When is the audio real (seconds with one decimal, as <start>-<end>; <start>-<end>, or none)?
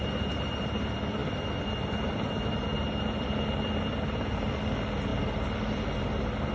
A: 0.0-6.5